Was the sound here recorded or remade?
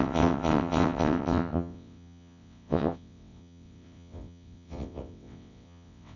remade